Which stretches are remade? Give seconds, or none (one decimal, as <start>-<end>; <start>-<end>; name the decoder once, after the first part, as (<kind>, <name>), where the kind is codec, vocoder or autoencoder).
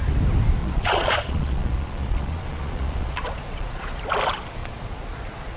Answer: 0.6-4.0 (vocoder, Vocos); 4.6-5.6